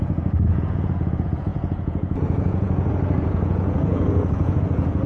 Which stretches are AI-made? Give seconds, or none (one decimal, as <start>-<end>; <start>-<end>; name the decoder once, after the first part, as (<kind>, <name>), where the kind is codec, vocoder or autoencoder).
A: 0.0-5.1 (vocoder, Vocos)